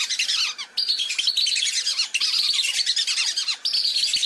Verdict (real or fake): real